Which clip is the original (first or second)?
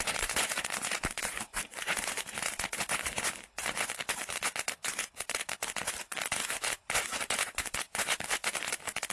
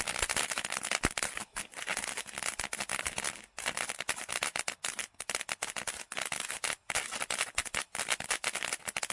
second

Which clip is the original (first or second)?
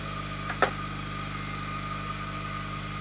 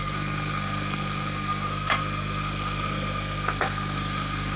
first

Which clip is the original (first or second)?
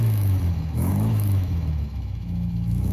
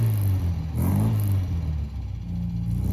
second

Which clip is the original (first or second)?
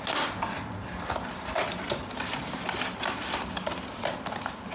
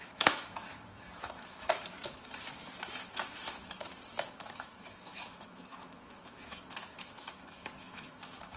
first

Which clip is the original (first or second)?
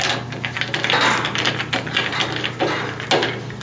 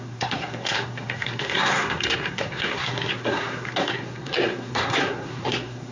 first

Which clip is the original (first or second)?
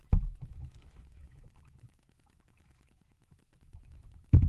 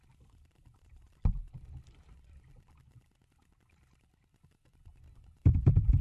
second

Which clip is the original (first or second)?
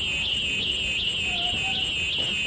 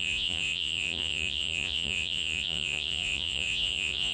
first